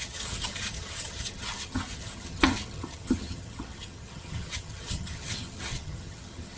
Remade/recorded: remade